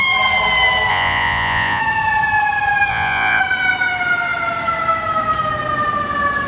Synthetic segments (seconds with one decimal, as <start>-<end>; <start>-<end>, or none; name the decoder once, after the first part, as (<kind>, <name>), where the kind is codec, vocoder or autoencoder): 0.9-1.8 (vocoder, Vocos); 2.9-3.4

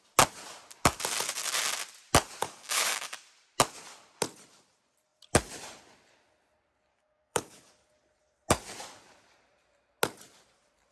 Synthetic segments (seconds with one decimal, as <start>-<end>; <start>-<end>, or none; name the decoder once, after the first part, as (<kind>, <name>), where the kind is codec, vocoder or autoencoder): 2.4-3.2 (codec, DAC); 6.9-7.7

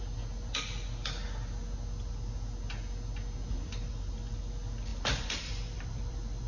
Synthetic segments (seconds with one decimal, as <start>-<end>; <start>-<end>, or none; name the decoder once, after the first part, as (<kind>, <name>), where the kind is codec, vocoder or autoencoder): 4.9-6.5 (vocoder, BigVGAN v2)